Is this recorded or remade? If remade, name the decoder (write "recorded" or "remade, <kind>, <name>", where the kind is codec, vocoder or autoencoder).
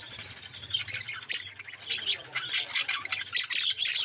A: recorded